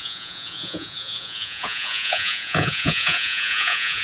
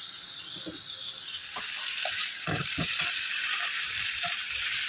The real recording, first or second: second